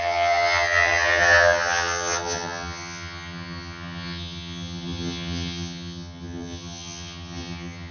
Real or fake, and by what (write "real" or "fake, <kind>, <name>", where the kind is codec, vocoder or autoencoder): fake, vocoder, HiFi-GAN